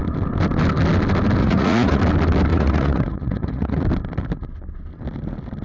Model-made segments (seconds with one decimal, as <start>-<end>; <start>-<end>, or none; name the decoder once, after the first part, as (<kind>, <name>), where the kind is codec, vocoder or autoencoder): 1.4-2.0 (vocoder, Vocos); 2.5-3.8